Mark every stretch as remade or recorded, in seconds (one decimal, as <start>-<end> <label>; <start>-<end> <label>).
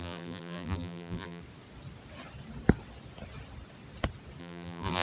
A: 0.0-1.4 remade; 1.4-4.4 recorded; 4.4-5.0 remade